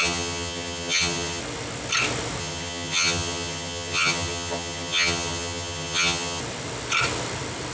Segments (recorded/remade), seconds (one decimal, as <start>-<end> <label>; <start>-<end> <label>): 0.0-1.4 remade; 1.4-2.4 recorded; 2.4-6.4 remade; 6.4-7.7 recorded